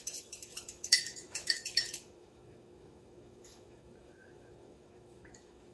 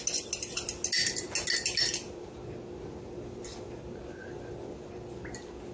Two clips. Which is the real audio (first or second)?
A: second